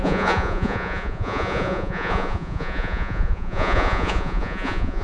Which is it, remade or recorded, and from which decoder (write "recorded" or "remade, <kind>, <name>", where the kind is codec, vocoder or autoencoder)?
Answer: remade, vocoder, Vocos